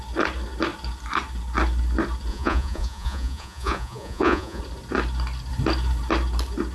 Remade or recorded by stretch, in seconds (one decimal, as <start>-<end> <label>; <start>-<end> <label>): 0.0-2.3 recorded; 2.3-4.6 remade; 4.6-6.7 recorded